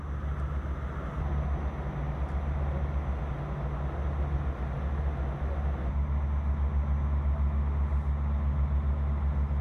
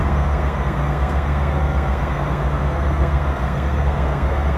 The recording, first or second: first